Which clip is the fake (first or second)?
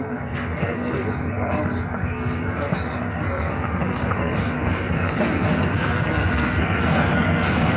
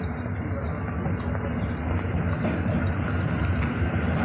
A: first